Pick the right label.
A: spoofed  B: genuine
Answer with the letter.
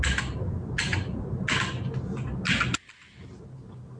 B